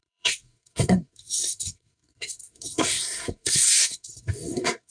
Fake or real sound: fake